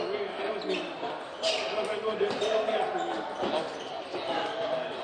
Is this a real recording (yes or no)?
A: yes